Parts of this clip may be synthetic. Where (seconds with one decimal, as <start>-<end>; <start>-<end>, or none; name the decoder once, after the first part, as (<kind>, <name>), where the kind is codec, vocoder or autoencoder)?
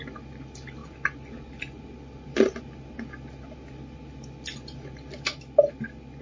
0.0-0.8 (vocoder, BigVGAN v2); 1.6-6.2